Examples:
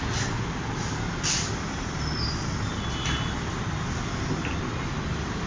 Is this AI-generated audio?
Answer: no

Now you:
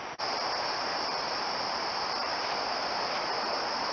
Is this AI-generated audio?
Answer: yes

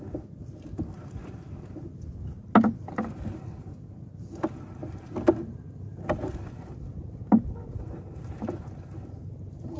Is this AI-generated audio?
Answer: no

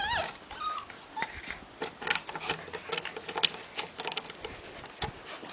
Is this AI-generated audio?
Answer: no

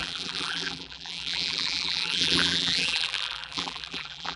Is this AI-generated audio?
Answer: yes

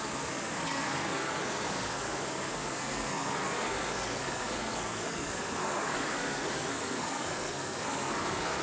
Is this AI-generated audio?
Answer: yes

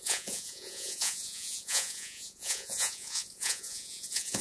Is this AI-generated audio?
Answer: yes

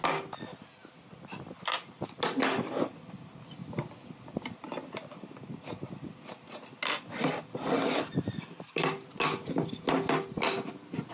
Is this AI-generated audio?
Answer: no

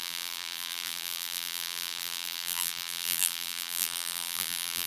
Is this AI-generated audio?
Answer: yes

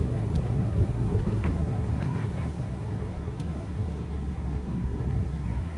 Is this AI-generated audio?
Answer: yes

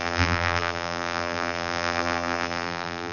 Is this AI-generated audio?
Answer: yes